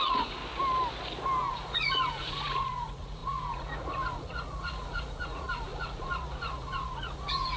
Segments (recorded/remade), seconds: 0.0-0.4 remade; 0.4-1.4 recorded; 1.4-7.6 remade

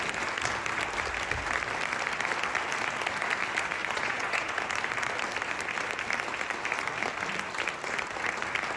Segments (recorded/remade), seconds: 0.0-3.8 recorded; 3.8-4.5 remade; 4.5-8.8 recorded

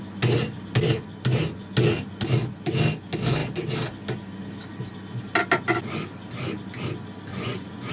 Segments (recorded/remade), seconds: 0.0-7.3 recorded; 7.3-7.9 remade

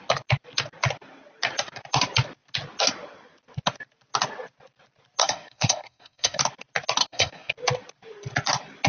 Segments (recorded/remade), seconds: 0.0-5.2 recorded; 5.2-6.4 remade; 6.4-7.0 recorded; 7.0-7.5 remade; 7.5-8.9 recorded

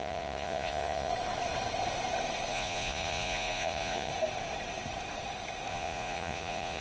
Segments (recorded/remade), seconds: 0.0-1.1 remade; 1.1-2.5 recorded; 2.5-4.1 remade; 4.1-5.7 recorded; 5.7-6.8 remade